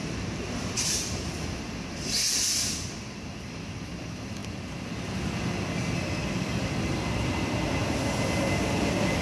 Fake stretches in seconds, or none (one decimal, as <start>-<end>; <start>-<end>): 0.0-4.4